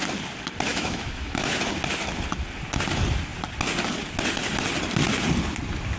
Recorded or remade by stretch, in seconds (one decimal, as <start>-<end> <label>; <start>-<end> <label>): 0.0-0.7 recorded; 0.7-1.5 remade; 1.5-6.0 recorded